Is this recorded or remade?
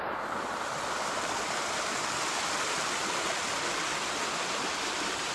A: recorded